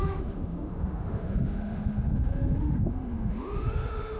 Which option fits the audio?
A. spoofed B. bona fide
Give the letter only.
A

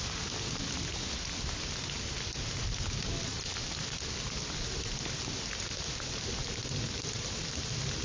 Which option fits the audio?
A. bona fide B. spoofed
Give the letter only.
A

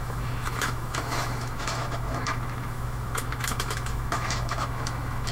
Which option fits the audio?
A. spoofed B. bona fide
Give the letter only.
A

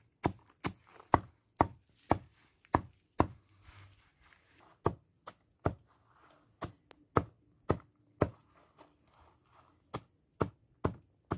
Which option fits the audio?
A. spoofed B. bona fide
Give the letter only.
B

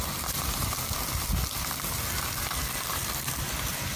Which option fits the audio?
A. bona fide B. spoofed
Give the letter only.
A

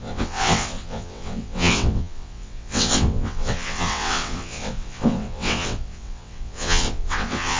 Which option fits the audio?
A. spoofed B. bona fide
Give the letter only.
A